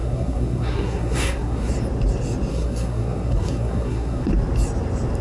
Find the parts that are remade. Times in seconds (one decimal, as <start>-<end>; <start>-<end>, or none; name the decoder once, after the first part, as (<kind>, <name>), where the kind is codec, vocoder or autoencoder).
0.0-1.7 (codec, SNAC); 2.5-4.3